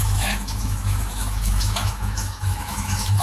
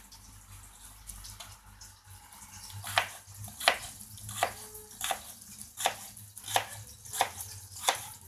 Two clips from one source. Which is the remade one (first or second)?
first